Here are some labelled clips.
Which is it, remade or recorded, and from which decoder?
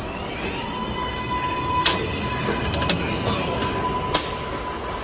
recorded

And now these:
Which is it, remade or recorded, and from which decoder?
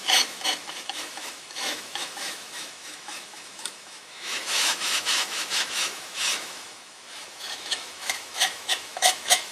remade, autoencoder, DAC-VAE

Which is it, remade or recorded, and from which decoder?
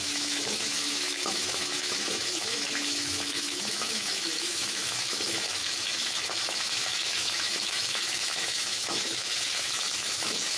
remade, autoencoder, DAC-VAE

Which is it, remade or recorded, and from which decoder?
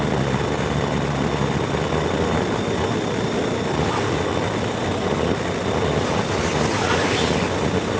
recorded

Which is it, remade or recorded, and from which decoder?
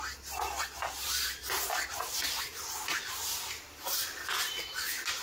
recorded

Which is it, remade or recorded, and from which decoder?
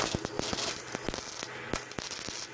recorded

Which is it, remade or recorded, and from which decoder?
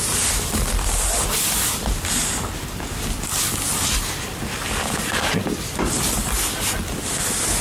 recorded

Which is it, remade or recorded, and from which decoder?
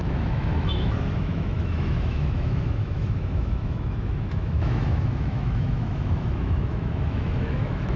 remade, autoencoder, DAC-VAE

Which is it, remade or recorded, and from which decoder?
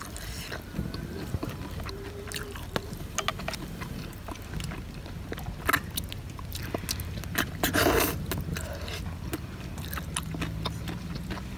recorded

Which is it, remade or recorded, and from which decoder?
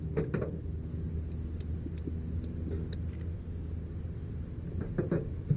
recorded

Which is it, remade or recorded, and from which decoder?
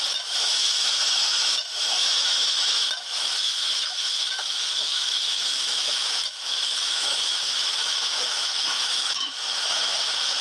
remade, autoencoder, DAC-VAE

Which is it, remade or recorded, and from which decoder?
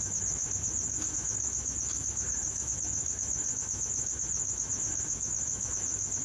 remade, autoencoder, DAC-VAE